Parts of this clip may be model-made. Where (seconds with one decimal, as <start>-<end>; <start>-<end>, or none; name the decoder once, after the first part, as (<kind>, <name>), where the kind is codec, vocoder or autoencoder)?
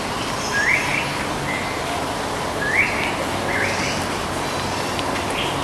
none